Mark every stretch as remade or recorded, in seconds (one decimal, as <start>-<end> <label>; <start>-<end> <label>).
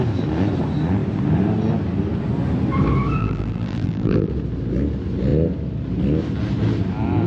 0.0-3.2 recorded; 3.2-4.3 remade; 4.3-7.3 recorded